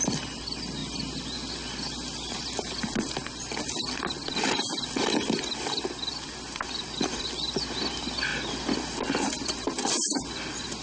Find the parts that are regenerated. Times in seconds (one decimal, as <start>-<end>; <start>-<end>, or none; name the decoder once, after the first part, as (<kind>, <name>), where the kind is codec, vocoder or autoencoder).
none